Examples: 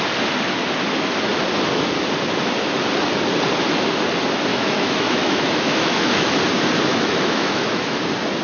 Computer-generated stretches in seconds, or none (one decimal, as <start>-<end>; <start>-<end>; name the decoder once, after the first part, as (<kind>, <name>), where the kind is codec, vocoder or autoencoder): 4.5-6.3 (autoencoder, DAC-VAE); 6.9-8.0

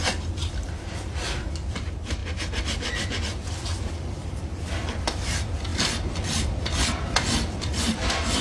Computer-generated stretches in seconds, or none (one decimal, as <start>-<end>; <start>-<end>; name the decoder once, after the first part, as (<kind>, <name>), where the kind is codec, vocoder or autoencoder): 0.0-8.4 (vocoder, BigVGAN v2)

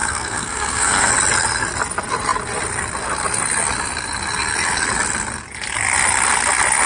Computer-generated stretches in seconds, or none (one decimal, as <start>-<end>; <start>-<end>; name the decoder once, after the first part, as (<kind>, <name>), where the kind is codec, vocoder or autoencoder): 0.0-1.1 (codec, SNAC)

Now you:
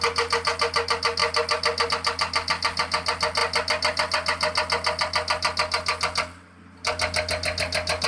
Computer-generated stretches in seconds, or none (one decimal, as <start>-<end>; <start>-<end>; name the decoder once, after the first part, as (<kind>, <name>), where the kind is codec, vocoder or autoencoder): none